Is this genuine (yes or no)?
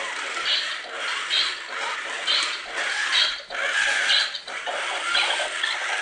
yes